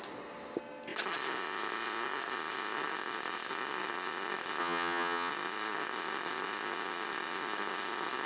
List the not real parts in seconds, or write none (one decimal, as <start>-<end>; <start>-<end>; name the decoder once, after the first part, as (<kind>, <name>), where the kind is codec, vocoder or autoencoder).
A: 4.6-5.3 (vocoder, HiFi-GAN)